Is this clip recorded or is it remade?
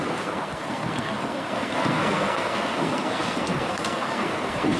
remade